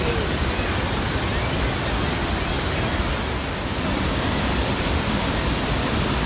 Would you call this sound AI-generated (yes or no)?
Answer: no